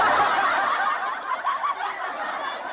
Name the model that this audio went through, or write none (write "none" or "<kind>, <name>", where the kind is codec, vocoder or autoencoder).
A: none